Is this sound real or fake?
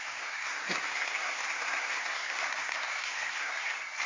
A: fake